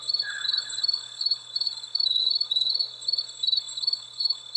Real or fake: fake